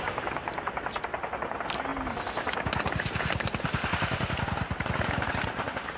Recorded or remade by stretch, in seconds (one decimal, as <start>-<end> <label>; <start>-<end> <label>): 0.0-6.0 recorded